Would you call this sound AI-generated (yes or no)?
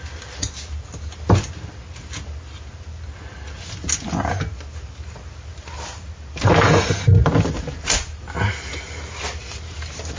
no